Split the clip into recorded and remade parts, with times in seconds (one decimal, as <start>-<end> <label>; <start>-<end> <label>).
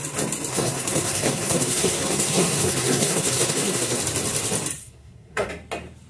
0.0-0.5 recorded; 0.5-4.0 remade; 4.0-4.8 recorded; 4.8-5.5 remade; 5.5-6.1 recorded